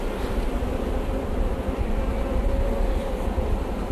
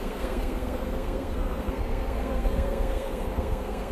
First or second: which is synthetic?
second